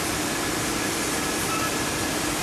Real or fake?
real